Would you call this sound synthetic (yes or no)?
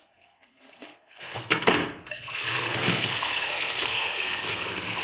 yes